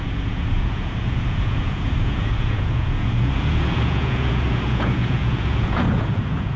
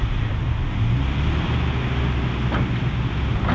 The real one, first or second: second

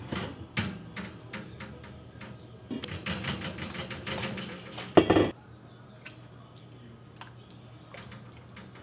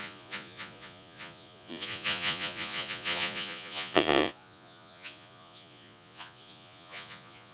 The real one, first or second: first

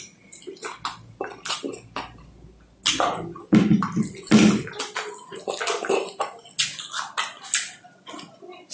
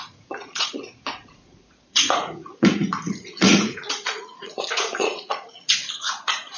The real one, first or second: first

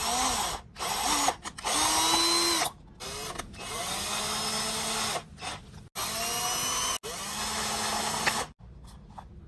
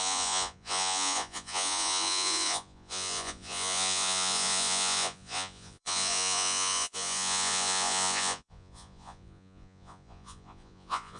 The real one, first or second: first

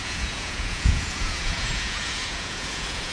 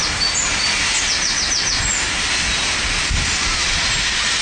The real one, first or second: second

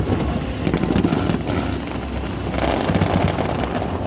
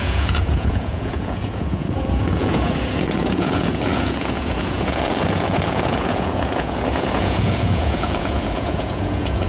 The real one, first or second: first